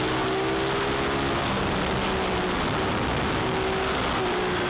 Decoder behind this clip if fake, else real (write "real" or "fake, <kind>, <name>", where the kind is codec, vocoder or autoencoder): real